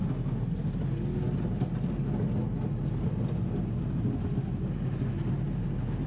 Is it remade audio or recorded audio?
recorded